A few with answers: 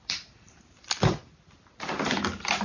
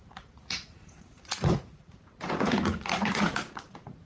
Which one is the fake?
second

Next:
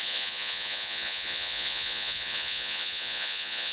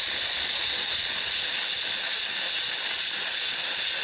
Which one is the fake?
first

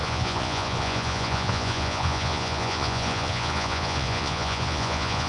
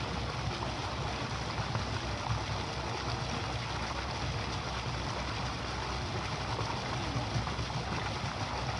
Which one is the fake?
first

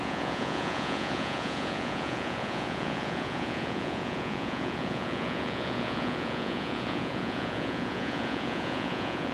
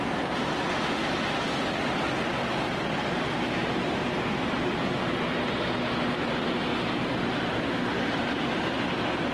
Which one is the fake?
first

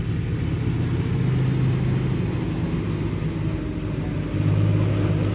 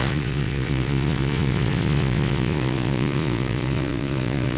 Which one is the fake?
second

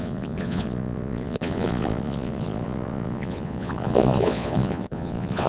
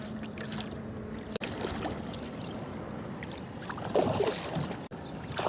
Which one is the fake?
first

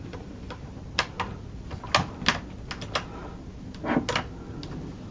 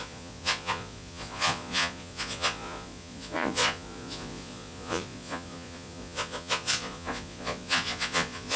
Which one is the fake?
second